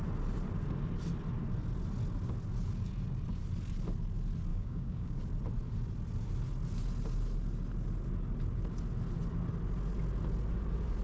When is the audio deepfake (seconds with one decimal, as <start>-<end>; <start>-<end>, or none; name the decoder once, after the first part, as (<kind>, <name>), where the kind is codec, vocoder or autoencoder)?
4.5-5.2 (codec, DAC)

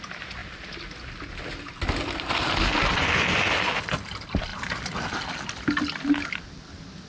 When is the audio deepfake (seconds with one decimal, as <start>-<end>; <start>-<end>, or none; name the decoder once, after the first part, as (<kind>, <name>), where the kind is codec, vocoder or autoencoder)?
none

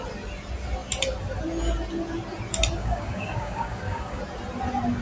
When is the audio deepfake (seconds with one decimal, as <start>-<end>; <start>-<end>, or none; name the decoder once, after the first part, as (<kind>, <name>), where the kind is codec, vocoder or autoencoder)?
2.8-4.2 (codec, DAC)